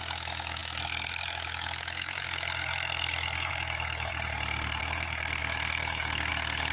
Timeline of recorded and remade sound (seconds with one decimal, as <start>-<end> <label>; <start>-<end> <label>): 0.0-4.1 remade; 4.1-4.8 recorded; 4.8-6.7 remade